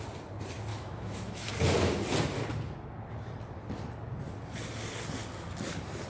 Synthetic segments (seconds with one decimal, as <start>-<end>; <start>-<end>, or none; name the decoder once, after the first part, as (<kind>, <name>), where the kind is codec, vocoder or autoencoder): 0.7-1.5 (autoencoder, DAC-VAE)